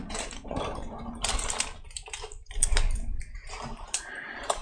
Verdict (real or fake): fake